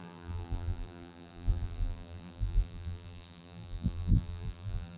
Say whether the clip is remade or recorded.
remade